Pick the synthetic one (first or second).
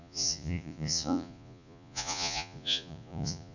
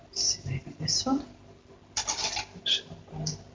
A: first